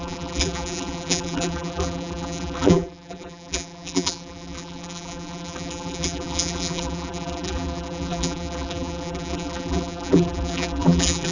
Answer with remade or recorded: remade